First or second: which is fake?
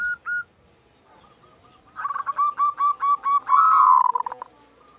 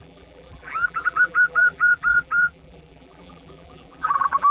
second